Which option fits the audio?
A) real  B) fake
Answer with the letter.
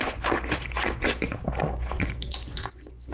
B